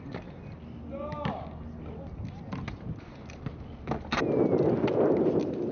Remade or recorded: recorded